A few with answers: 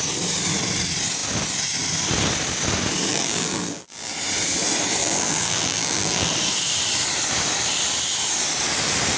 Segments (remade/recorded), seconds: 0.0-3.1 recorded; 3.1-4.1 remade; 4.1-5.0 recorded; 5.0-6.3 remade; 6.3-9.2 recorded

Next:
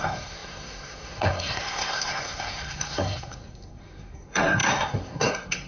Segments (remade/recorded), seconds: 0.0-5.7 remade

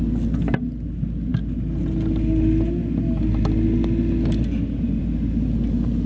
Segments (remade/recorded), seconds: 0.0-6.1 recorded

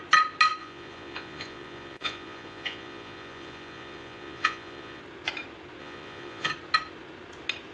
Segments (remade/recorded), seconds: 0.0-0.6 recorded; 0.6-5.0 remade; 5.0-5.8 recorded; 5.8-6.5 remade; 6.5-7.7 recorded